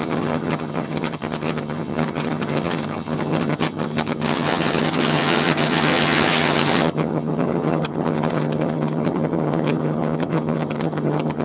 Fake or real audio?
fake